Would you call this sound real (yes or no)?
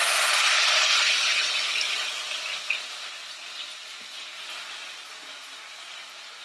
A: yes